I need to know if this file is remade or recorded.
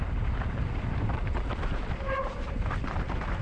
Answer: remade